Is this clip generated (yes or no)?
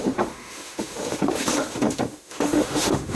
yes